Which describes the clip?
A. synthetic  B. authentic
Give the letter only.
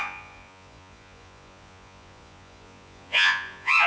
A